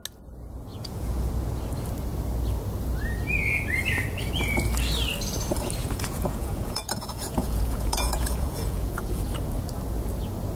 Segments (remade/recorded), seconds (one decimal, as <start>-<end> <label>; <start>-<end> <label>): 0.0-0.7 recorded; 0.7-1.3 remade; 1.3-5.8 recorded; 5.8-9.2 remade; 9.2-10.6 recorded